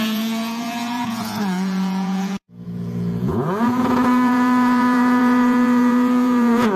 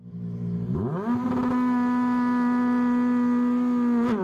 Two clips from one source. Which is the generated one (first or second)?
first